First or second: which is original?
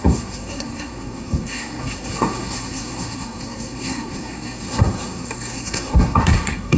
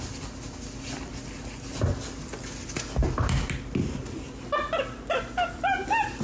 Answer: second